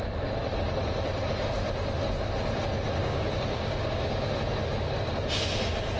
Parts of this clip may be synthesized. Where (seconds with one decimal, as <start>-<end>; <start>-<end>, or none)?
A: 3.0-4.3